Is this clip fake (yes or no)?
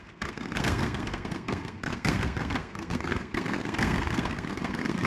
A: yes